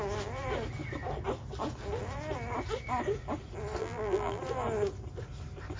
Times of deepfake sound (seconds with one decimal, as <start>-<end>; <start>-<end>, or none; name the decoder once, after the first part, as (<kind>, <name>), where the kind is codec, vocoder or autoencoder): 3.8-4.4 (vocoder, BigVGAN v2)